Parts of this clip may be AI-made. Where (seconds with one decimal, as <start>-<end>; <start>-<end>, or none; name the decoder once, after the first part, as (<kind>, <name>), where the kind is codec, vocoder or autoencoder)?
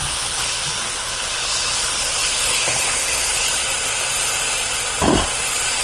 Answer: 0.0-3.6 (codec, HILCodec)